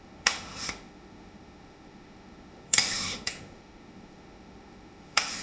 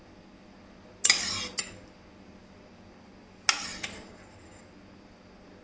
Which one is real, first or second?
second